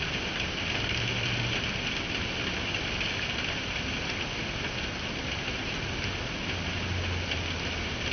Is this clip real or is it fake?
real